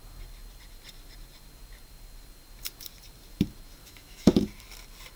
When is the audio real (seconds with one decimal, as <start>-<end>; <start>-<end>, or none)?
0.0-3.8; 4.4-5.2